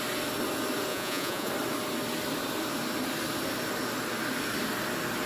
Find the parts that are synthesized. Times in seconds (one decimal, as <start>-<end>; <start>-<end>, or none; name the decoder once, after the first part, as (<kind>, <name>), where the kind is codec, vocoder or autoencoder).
0.9-1.5 (vocoder, Vocos)